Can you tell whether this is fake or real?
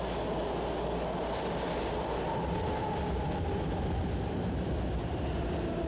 real